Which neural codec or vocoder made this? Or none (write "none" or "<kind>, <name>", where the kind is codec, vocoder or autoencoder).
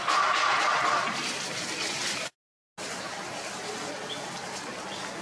none